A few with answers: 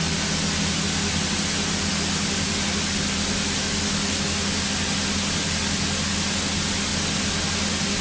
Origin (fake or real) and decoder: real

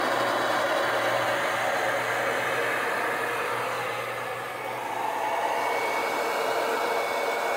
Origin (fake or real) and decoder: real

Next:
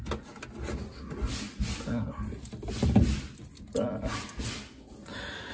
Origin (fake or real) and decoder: real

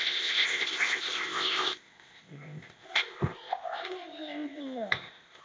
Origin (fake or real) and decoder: fake, codec, ZipCodec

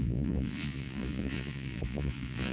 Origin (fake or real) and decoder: fake, vocoder, Vocos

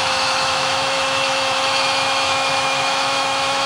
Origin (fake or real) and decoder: fake, autoencoder, DAC-VAE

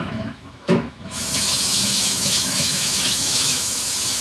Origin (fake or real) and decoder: fake, autoencoder, DAC-VAE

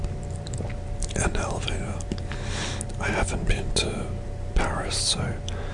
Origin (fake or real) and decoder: real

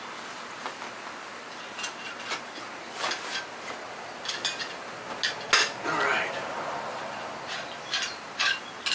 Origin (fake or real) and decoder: real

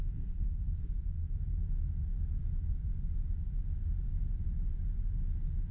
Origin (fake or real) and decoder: real